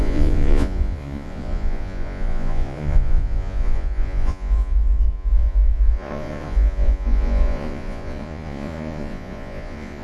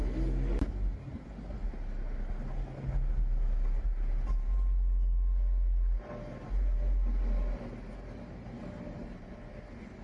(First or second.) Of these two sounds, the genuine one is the second